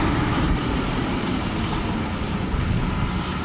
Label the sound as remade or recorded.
recorded